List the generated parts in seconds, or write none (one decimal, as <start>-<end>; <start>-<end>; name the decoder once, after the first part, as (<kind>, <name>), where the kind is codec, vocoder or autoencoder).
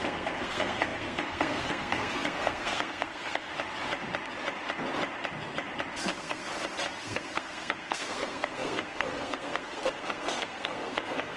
0.0-3.5 (codec, SNAC); 6.0-6.5; 7.0-11.4